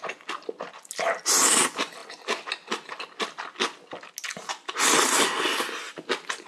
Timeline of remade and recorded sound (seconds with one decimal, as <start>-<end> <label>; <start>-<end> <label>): 0.0-6.5 recorded